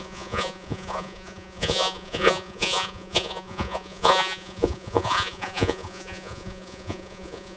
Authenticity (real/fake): fake